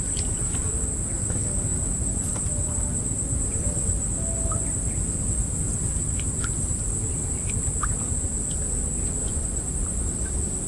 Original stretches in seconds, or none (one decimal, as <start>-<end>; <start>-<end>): 0.0-9.2; 9.7-10.7